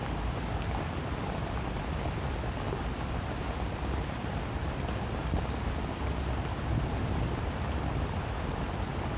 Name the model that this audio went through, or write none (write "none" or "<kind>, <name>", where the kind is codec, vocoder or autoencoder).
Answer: none